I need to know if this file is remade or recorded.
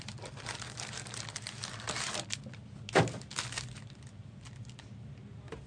recorded